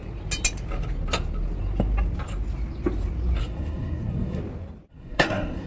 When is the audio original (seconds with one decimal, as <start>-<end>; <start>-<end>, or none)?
0.0-3.4; 4.4-4.9